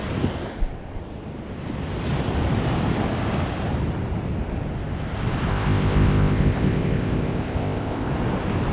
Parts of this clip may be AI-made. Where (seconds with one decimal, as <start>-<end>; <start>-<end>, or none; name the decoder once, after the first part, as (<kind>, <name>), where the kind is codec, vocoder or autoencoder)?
5.5-8.1 (codec, ZipCodec)